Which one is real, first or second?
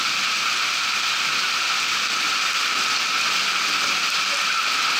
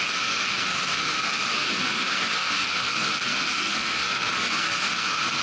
first